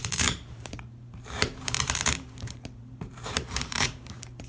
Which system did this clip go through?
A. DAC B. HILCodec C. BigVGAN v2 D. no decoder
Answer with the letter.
C